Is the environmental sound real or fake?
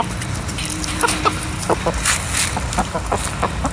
real